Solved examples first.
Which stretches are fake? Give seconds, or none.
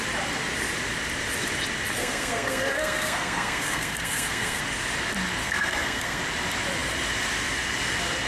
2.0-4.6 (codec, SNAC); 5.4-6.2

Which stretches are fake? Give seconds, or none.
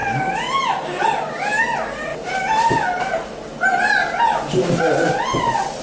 none